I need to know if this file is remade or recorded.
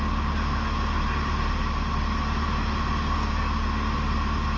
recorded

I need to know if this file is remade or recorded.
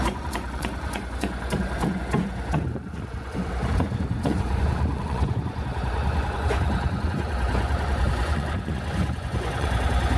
remade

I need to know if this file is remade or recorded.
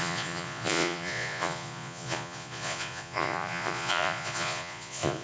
remade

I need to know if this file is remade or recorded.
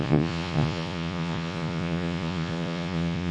remade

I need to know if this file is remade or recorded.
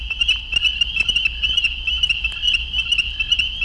recorded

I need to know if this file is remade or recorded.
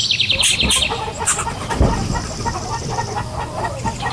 recorded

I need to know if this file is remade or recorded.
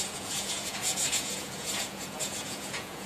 remade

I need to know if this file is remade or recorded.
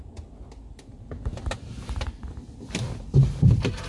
recorded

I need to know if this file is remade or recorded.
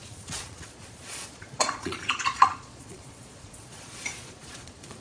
remade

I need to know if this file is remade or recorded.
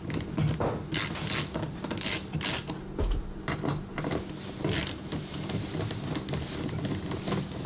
recorded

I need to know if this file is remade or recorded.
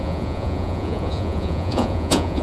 remade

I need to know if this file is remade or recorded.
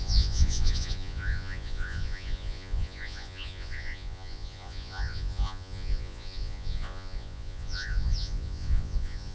remade